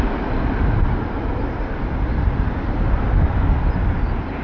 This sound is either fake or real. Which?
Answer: real